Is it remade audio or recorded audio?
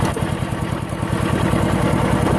recorded